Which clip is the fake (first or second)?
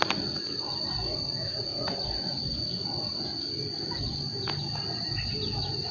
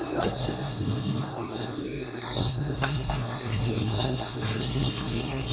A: second